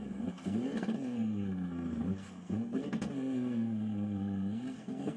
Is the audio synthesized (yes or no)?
yes